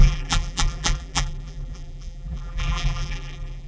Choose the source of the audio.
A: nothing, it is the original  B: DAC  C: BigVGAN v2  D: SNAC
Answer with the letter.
C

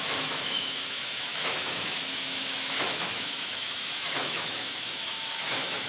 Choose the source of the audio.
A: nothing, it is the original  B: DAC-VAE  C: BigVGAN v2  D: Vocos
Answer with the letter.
B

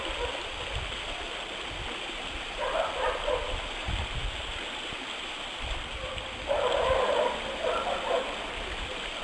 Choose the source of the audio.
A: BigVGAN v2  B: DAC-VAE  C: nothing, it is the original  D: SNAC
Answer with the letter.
C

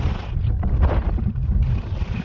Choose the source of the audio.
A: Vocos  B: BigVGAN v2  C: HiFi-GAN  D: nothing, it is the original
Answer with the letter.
B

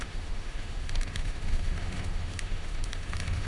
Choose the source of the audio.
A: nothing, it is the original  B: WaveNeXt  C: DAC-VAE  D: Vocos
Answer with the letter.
C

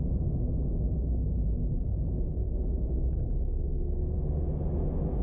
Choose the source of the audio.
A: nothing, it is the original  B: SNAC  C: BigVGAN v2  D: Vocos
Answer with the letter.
A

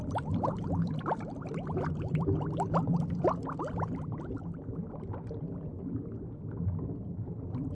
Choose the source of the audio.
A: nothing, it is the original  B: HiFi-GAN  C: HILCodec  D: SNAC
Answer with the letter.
A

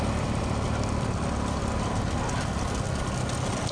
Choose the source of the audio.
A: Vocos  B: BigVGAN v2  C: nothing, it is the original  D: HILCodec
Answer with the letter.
C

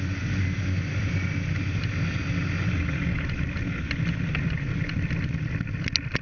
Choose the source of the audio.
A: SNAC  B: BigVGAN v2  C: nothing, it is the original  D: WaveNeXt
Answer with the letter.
C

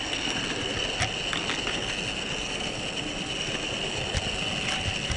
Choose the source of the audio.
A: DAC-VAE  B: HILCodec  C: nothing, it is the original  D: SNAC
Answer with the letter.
C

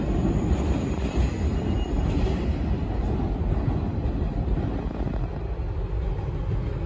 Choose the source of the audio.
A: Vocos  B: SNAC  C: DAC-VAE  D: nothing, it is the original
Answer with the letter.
D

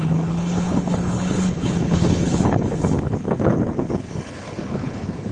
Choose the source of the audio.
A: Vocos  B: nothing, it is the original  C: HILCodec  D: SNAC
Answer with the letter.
C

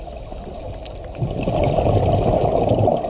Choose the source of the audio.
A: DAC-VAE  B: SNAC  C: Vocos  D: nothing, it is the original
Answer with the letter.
D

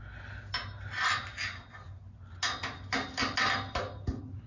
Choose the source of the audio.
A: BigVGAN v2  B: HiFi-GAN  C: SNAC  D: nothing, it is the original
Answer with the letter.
D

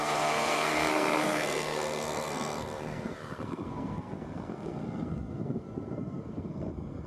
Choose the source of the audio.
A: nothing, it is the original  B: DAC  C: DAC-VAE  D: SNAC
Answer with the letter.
D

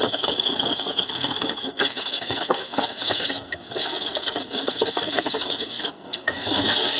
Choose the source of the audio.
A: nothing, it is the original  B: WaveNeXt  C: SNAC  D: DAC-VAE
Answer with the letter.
C